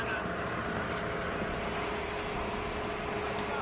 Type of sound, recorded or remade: recorded